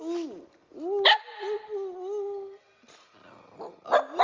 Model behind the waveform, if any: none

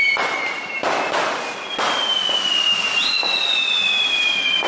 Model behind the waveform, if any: none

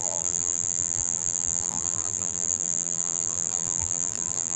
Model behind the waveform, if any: vocoder, BigVGAN v2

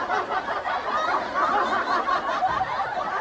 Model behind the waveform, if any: none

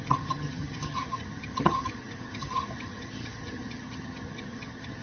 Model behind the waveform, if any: vocoder, HiFi-GAN